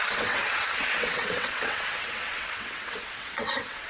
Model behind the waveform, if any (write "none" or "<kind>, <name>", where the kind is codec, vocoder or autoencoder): vocoder, WaveNeXt